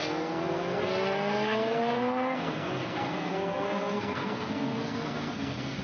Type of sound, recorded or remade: remade